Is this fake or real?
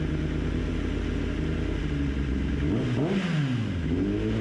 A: real